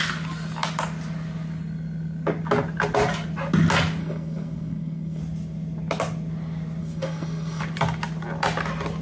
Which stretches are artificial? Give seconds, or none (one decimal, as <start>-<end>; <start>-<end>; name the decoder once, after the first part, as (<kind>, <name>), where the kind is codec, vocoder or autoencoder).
4.0-5.2 (codec, SNAC); 6.8-7.6